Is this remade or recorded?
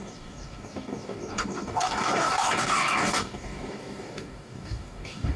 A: remade